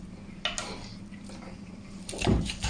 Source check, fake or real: real